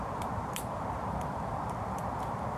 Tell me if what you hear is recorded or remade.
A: remade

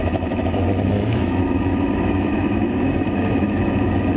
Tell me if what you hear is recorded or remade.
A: remade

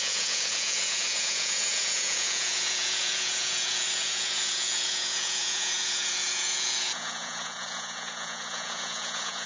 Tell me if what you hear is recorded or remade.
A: remade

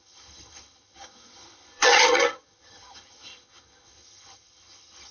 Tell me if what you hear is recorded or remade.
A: remade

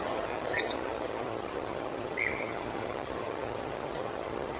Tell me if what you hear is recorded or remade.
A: remade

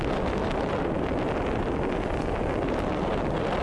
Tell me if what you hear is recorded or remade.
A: recorded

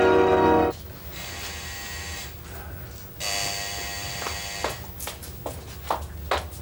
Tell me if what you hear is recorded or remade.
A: recorded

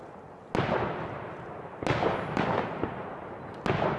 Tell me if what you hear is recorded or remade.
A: recorded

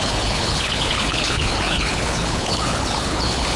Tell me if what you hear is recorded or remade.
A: remade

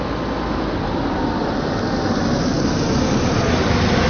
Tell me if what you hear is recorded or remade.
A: recorded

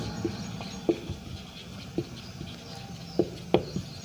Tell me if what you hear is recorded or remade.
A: recorded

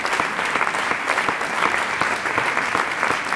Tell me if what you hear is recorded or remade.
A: recorded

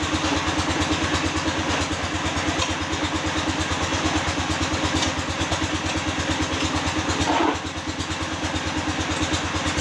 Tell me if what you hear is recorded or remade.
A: recorded